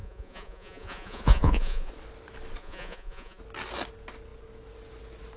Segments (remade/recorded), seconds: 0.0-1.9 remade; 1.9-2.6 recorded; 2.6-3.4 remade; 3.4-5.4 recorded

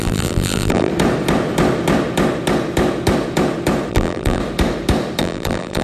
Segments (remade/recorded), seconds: 0.0-0.9 remade; 0.9-3.9 recorded; 3.9-4.4 remade; 4.4-5.2 recorded; 5.2-5.8 remade

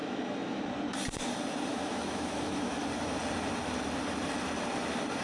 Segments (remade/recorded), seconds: 0.0-0.6 remade; 0.6-1.7 recorded; 1.7-2.8 remade; 2.8-5.2 recorded

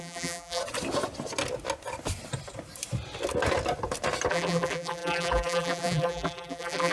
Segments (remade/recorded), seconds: 0.0-0.6 remade; 0.6-4.3 recorded; 4.3-6.9 remade

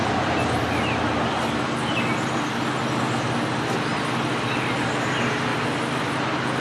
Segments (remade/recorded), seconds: 0.0-6.6 recorded

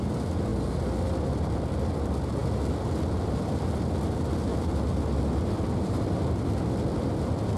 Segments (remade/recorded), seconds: 0.0-7.6 recorded